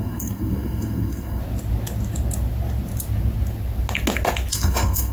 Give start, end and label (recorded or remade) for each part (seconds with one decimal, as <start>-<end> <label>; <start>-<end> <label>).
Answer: 0.0-1.4 remade; 1.4-4.5 recorded; 4.5-5.1 remade